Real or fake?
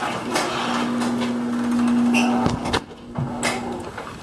real